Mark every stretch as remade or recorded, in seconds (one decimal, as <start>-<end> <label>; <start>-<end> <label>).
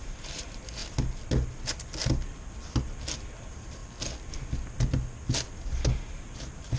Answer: 0.0-0.8 remade; 0.8-3.4 recorded; 3.4-3.8 remade; 3.8-6.1 recorded; 6.1-6.8 remade